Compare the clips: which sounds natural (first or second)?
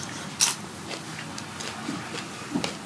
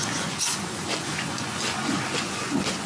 first